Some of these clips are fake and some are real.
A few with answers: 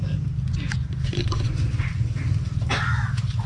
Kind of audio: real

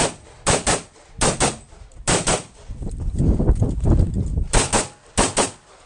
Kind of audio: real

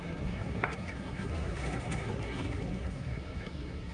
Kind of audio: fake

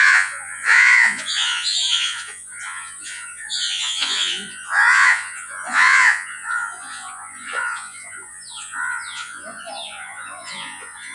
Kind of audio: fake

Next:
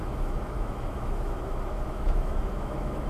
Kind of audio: fake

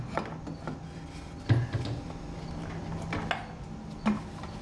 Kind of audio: real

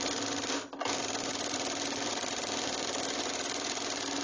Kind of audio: real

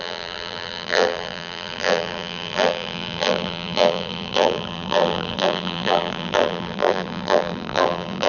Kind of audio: fake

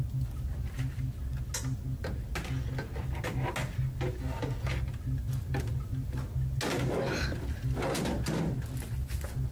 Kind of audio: real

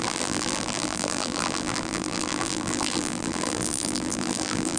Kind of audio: fake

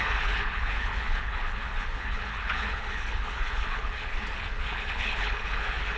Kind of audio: fake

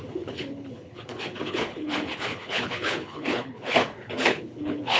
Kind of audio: fake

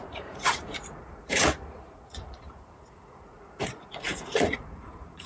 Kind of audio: fake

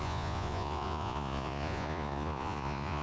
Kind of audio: fake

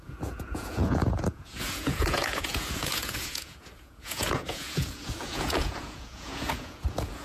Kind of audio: fake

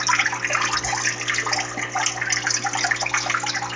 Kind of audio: real